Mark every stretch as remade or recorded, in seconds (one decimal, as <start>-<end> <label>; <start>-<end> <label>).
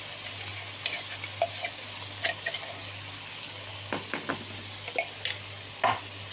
0.0-6.3 recorded